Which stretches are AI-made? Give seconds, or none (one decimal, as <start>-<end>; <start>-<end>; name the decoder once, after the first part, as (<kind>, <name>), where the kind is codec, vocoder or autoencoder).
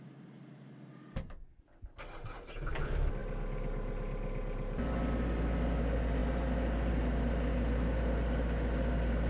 none